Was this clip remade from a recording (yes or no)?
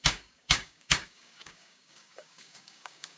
yes